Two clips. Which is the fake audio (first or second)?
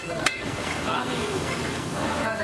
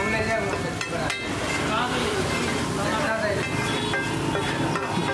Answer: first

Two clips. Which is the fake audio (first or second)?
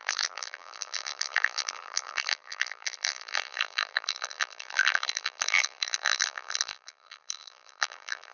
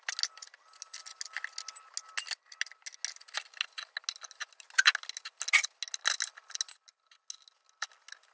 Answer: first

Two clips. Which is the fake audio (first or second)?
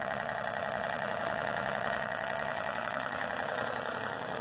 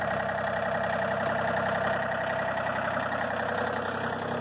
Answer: first